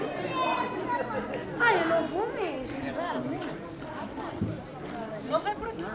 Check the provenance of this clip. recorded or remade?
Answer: recorded